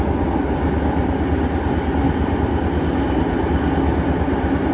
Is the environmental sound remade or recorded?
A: recorded